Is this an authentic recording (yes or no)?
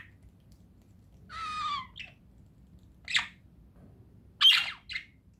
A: yes